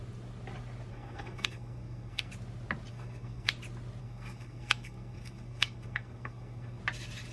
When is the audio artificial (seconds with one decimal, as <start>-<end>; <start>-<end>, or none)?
0.9-2.3; 2.9-3.5; 4.0-6.8